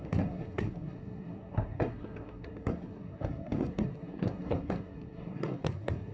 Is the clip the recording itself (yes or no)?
no